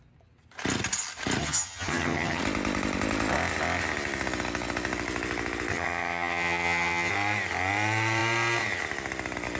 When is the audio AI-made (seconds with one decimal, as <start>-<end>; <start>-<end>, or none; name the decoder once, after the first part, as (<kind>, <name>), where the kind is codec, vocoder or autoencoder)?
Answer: 1.4-2.4 (vocoder, HiFi-GAN); 5.7-7.1